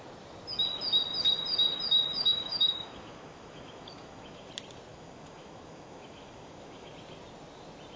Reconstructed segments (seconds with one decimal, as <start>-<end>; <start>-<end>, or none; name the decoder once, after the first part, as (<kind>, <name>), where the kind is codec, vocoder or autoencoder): 2.1-4.5 (autoencoder, DAC-VAE); 4.9-6.9